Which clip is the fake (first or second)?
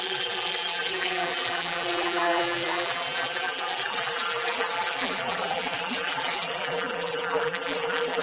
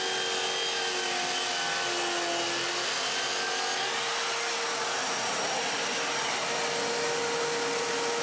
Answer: first